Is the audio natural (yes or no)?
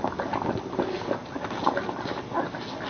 yes